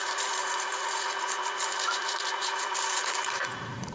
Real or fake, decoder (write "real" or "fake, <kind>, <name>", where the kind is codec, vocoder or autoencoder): fake, vocoder, Vocos